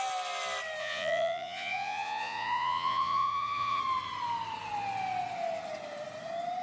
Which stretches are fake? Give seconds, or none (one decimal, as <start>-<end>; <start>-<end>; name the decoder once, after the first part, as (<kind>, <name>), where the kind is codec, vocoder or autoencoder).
0.8-3.8 (vocoder, Vocos)